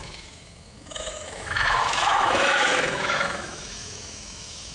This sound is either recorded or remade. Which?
remade